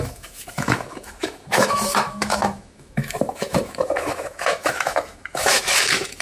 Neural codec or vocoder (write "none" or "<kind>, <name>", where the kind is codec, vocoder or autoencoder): autoencoder, DAC-VAE